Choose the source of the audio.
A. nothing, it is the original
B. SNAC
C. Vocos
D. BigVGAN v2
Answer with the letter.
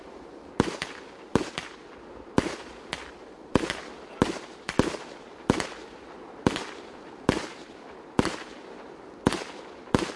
A